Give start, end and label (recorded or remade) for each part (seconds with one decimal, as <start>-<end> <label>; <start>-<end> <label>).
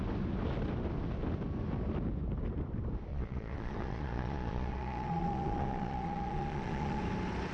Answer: 0.0-3.1 recorded; 3.1-7.0 remade; 7.0-7.5 recorded